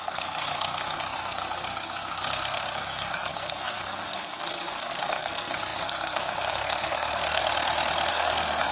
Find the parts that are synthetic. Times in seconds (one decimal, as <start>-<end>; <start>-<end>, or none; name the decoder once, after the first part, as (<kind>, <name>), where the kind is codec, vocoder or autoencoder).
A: 0.0-7.4 (codec, SNAC); 8.1-8.7